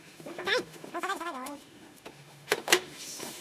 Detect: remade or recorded remade